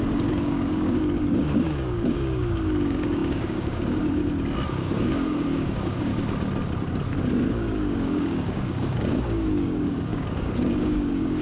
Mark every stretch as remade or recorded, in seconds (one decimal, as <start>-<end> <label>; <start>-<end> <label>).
0.0-4.2 remade; 4.2-4.7 recorded; 4.7-6.1 remade; 6.1-7.5 recorded; 7.5-11.4 remade